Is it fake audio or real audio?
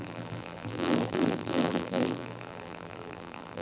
fake